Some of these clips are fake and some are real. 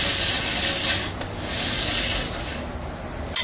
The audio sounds real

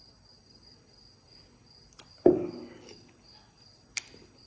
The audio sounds real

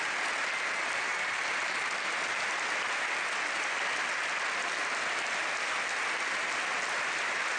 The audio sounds real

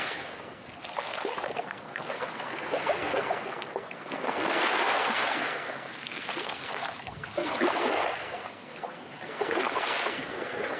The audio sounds fake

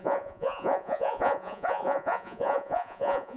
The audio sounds fake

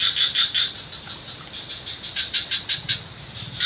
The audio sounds real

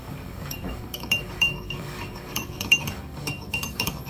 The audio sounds fake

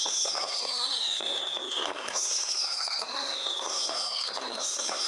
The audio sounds fake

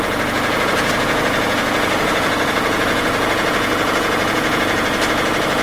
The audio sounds fake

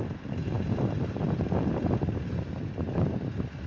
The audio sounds real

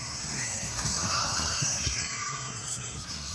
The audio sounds fake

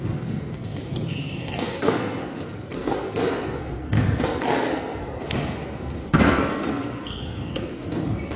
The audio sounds fake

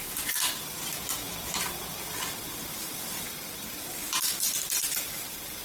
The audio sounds real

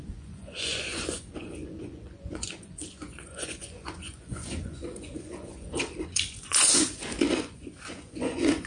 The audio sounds fake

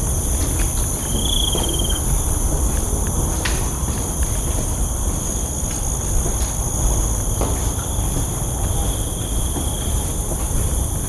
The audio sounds real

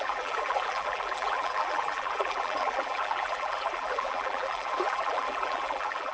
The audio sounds fake